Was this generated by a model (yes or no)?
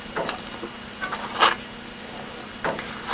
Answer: no